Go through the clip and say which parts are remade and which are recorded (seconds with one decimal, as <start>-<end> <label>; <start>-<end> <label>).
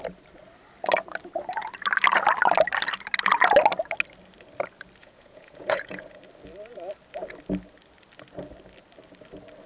0.0-5.0 recorded; 5.0-6.2 remade; 6.2-9.7 recorded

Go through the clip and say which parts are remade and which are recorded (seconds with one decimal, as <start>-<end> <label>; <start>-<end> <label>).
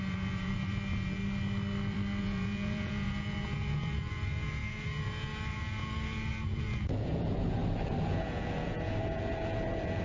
0.0-1.2 remade; 1.2-2.2 recorded; 2.2-10.0 remade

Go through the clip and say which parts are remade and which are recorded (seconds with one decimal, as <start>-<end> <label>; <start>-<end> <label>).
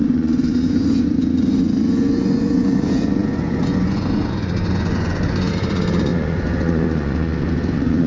0.0-1.2 remade; 1.2-2.0 recorded; 2.0-8.1 remade